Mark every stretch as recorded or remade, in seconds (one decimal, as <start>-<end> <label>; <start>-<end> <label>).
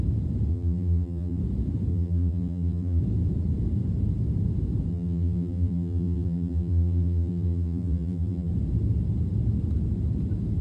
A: 0.0-0.5 recorded; 0.5-1.4 remade; 1.4-1.9 recorded; 1.9-3.0 remade; 3.0-4.9 recorded; 4.9-8.5 remade; 8.5-10.6 recorded